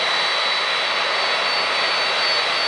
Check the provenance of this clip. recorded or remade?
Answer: recorded